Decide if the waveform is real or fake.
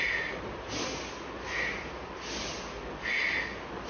real